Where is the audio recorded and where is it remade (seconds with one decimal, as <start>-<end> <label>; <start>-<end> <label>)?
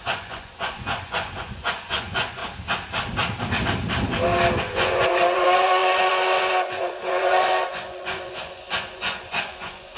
0.0-2.4 remade; 2.4-4.6 recorded; 4.6-10.0 remade